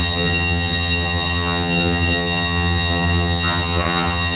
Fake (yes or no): yes